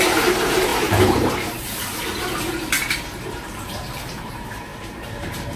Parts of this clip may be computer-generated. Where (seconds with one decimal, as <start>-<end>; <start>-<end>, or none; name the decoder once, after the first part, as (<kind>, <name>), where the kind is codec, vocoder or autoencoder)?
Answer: 0.0-5.6 (vocoder, BigVGAN v2)